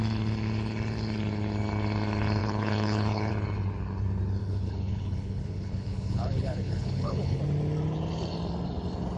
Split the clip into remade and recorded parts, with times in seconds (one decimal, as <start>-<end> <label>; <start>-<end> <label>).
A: 0.0-2.4 recorded; 2.4-3.3 remade; 3.3-4.4 recorded; 4.4-7.4 remade; 7.4-9.2 recorded